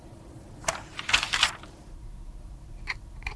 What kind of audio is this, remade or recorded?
recorded